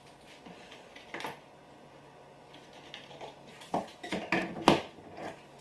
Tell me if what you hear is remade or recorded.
recorded